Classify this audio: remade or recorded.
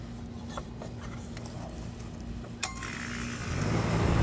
recorded